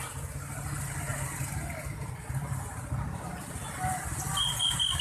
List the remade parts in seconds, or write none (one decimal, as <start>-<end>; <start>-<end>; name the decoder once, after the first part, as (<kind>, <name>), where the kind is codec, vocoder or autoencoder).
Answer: none